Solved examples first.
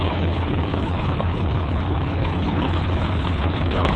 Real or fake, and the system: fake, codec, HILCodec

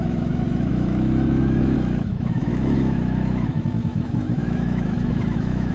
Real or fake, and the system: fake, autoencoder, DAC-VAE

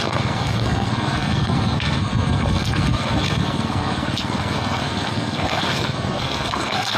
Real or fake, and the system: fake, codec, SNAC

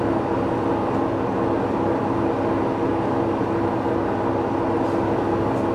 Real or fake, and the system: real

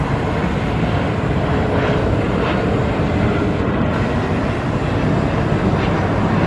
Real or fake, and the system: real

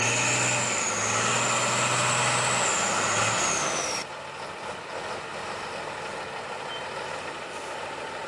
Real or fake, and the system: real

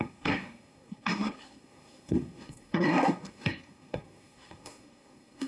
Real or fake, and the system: fake, codec, SNAC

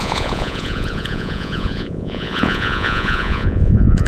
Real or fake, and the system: fake, vocoder, Vocos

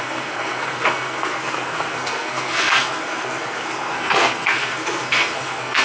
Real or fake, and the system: fake, codec, SNAC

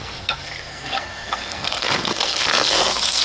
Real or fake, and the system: fake, codec, SNAC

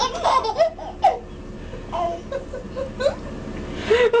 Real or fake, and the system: real